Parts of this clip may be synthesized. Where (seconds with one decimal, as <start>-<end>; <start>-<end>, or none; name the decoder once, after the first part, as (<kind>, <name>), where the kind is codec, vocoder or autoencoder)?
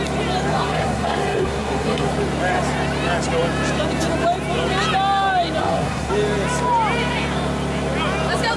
0.5-2.1 (codec, SNAC); 5.6-6.1